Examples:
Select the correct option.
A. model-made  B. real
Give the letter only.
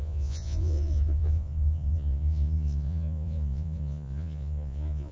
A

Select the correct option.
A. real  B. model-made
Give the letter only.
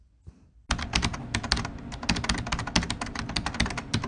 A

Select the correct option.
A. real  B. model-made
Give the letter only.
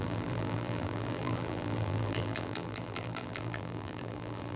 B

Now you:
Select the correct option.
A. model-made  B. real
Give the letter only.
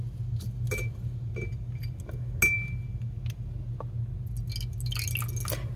B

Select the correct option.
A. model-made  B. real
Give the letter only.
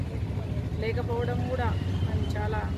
B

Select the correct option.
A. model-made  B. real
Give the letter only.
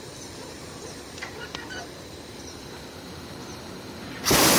A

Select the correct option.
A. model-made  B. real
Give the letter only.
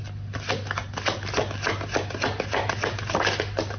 B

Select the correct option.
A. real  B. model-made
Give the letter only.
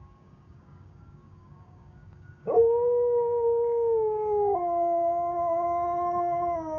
B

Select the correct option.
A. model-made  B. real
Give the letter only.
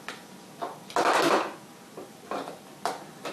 B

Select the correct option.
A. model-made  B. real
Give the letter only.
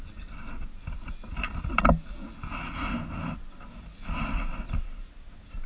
B